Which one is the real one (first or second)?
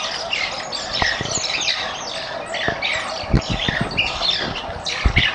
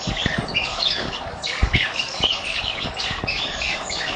first